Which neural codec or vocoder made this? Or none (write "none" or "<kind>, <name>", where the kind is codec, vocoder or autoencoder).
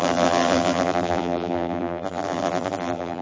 vocoder, BigVGAN v2